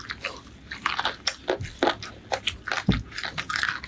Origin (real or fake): real